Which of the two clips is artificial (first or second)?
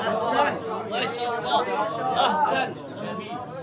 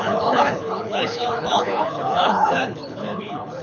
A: second